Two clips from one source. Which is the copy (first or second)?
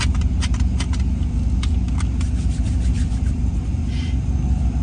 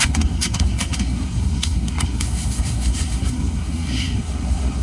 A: second